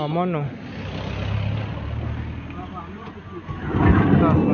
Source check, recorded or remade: recorded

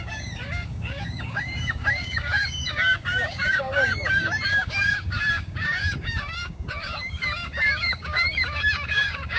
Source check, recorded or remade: remade